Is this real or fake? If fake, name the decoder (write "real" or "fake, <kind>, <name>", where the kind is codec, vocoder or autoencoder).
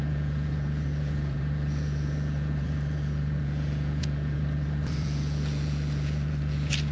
fake, vocoder, Vocos